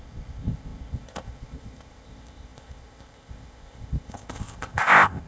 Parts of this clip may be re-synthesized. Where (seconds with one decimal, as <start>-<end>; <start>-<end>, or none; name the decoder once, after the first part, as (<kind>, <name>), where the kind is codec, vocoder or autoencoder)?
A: 0.0-5.3 (codec, ZipCodec)